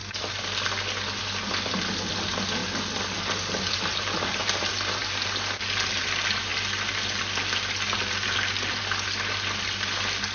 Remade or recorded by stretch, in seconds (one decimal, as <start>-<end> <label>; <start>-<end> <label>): 0.0-10.3 recorded